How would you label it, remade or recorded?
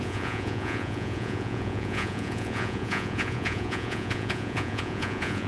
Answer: remade